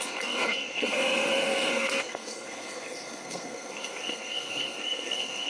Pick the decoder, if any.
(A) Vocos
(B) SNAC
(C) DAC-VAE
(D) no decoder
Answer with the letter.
B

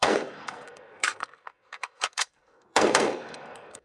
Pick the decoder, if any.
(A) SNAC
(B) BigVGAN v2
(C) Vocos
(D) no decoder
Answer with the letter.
A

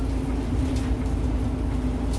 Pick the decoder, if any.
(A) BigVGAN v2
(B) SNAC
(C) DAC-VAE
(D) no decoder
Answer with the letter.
D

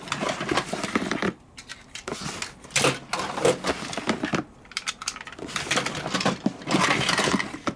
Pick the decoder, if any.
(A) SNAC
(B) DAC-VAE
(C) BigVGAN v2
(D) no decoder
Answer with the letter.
D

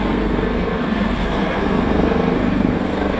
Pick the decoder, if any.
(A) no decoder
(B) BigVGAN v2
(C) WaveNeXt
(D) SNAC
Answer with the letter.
D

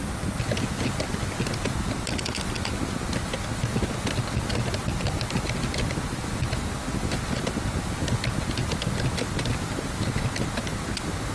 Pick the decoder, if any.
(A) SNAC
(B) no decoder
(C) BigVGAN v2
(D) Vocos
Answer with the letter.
B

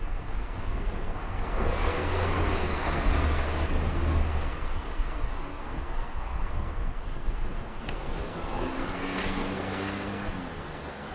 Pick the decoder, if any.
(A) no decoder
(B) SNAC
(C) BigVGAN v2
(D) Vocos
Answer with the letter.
B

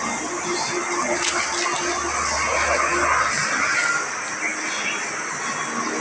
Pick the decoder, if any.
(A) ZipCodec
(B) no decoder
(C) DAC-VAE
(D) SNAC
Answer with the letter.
B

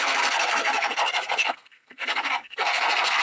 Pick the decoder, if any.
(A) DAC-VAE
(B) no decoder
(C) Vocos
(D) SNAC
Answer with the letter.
D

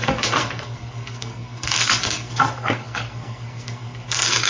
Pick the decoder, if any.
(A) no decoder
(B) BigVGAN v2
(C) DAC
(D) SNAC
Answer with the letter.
D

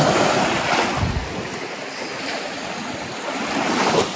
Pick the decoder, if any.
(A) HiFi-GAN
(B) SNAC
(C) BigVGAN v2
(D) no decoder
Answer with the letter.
D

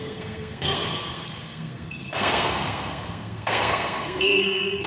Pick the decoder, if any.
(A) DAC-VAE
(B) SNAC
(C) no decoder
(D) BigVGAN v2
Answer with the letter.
B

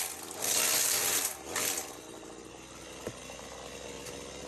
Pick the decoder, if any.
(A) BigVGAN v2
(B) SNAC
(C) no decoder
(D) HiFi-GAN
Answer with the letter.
C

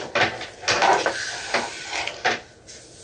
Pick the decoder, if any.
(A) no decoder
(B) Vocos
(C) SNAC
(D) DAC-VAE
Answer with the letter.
A